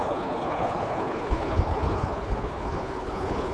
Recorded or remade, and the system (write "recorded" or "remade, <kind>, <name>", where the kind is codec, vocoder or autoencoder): remade, codec, HILCodec